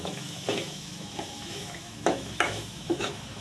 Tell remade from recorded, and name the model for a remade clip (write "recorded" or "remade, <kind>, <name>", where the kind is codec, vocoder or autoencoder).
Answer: remade, autoencoder, DAC-VAE